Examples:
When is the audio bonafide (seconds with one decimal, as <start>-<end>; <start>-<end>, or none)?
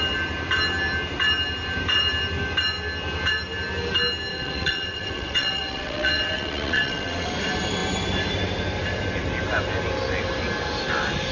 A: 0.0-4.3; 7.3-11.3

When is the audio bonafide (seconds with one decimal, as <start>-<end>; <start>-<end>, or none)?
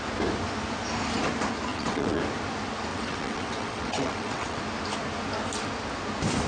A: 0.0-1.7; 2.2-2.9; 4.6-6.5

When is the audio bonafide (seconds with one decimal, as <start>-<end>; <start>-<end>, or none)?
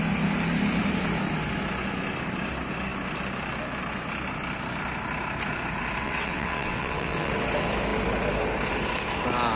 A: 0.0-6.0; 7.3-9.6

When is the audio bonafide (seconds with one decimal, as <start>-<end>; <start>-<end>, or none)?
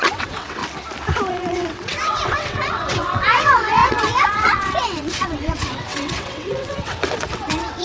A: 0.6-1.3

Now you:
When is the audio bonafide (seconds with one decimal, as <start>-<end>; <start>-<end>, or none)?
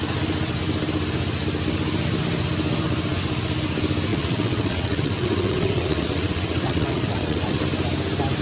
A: 0.0-4.1; 7.6-8.4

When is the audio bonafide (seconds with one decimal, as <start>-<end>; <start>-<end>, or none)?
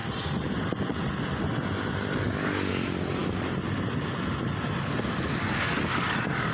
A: 0.0-6.5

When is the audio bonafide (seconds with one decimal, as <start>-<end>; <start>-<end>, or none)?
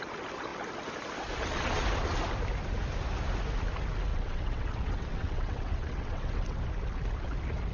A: 0.0-4.1; 6.6-7.7